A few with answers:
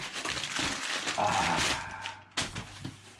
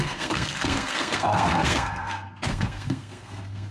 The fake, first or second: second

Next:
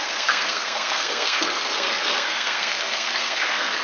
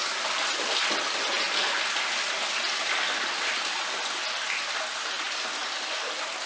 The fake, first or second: first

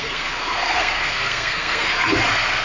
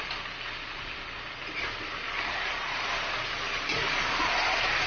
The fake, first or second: first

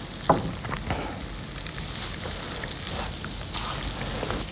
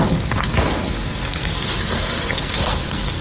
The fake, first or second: second